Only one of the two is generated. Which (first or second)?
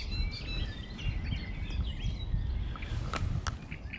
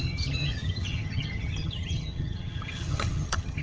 second